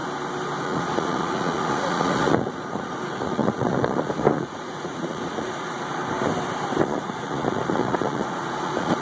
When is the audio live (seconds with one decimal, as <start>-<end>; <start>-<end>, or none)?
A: 0.0-0.6; 6.0-6.8